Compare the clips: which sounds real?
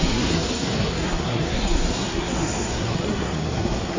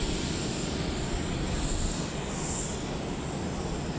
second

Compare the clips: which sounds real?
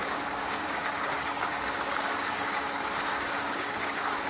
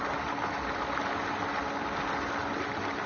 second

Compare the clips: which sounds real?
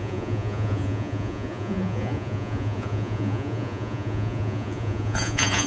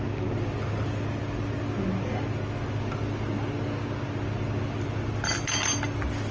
second